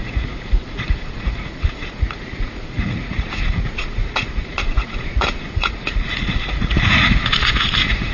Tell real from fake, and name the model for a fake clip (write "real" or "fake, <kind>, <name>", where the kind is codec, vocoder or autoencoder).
fake, vocoder, Vocos